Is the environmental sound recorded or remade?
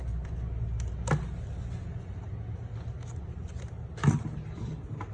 recorded